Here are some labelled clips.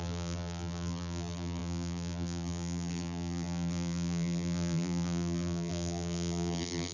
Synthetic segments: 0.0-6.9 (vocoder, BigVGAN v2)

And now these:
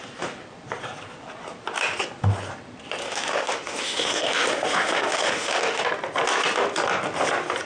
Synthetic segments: 3.0-5.8 (autoencoder, DAC-VAE)

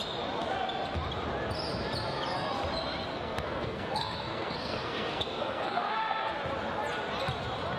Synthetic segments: 3.1-6.3 (codec, SNAC)

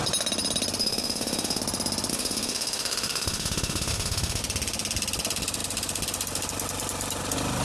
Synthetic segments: 0.8-1.6 (autoencoder, DAC-VAE); 2.1-4.4

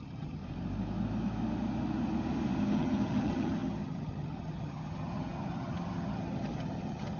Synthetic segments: 0.0-0.4 (vocoder, HiFi-GAN); 2.6-7.2

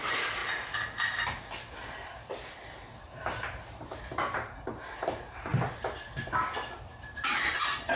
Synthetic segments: 0.0-0.4 (vocoder, BigVGAN v2); 1.9-5.5; 6.8-8.0

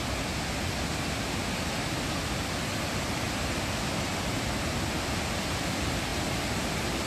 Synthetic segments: none